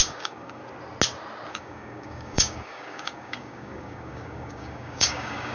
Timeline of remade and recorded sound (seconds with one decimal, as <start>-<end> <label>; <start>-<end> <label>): 0.0-0.6 remade; 0.6-1.5 recorded; 1.5-5.5 remade